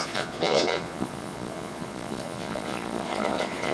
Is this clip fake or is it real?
fake